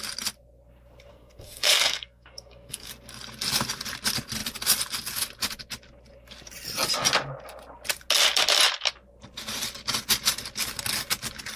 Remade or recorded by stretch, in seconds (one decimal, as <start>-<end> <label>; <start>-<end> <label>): 0.0-1.1 recorded; 1.1-2.9 remade; 2.9-11.6 recorded